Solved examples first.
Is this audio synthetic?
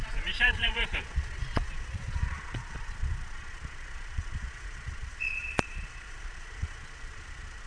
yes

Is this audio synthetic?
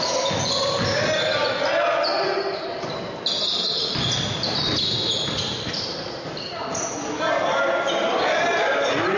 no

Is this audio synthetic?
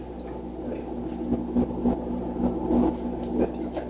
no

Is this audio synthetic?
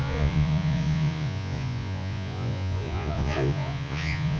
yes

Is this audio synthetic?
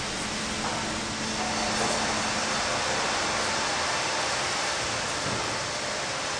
no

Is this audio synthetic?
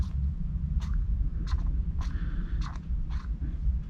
no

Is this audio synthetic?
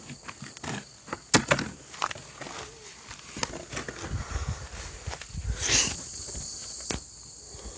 no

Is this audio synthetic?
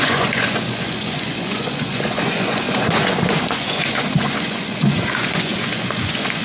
yes